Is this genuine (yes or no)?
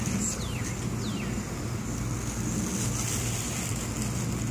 yes